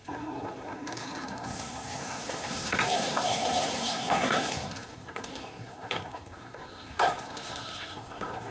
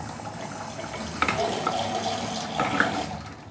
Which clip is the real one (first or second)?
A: second